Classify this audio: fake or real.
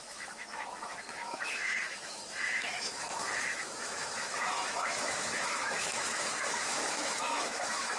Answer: fake